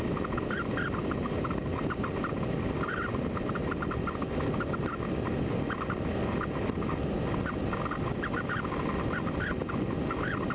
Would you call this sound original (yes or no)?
yes